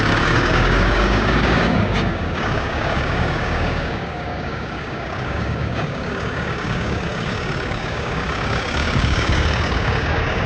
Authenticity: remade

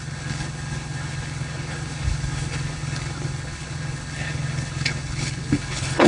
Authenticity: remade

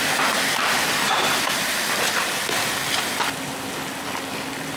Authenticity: recorded